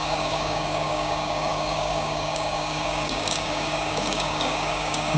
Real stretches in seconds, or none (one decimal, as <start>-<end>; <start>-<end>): none